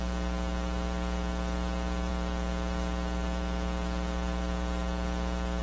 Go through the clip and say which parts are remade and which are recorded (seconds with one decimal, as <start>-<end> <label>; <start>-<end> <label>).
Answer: 0.0-5.6 recorded